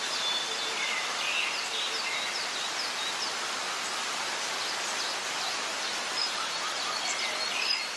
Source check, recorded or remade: remade